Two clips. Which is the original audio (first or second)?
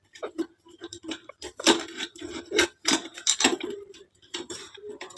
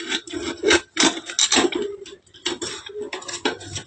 second